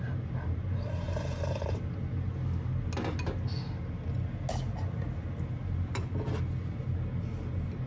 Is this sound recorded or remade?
recorded